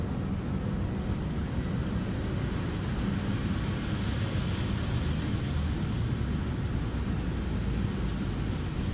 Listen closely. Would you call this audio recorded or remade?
recorded